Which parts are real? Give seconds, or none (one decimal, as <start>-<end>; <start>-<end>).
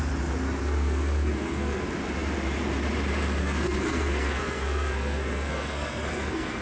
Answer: 0.0-0.6; 1.8-3.4